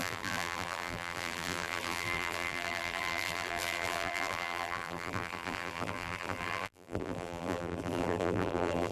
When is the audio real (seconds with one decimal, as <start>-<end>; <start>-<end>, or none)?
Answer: none